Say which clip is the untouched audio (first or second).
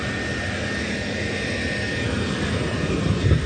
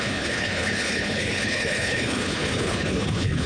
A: first